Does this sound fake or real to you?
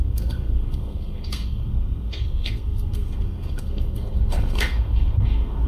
fake